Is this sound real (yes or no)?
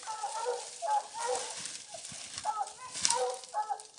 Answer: yes